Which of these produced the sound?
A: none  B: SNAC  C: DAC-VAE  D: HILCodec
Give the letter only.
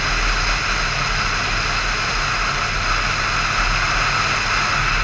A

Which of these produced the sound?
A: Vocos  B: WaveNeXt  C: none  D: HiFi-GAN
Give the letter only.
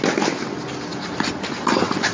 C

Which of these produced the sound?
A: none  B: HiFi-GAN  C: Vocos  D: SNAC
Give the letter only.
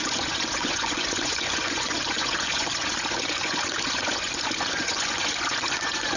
C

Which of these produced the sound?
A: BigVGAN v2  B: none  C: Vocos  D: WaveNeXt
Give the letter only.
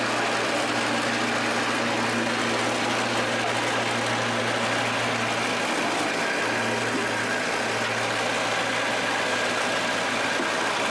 B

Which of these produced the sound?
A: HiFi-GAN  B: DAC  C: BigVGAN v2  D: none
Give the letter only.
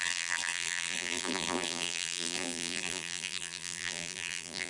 C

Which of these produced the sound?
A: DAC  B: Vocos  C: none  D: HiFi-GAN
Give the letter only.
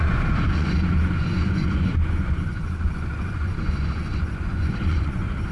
B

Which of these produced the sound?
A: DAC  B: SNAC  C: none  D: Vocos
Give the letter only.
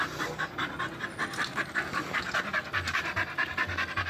C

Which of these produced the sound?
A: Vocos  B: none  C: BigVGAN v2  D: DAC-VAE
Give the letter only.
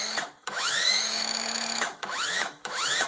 D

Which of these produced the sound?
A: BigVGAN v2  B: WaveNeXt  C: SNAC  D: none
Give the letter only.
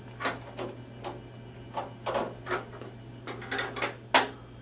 D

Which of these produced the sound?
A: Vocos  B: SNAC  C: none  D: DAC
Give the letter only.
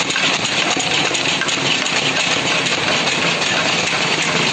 C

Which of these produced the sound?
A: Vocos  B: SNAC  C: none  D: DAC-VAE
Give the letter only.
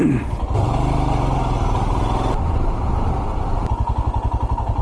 C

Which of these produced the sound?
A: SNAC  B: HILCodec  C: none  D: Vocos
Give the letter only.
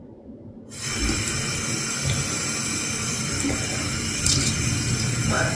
C